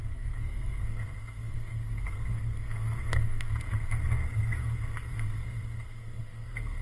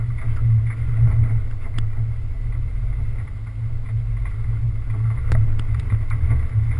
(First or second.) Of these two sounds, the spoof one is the first